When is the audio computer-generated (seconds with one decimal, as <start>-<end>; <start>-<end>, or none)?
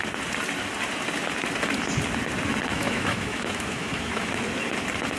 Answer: 2.7-4.3